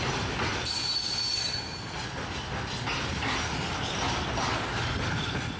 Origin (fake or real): real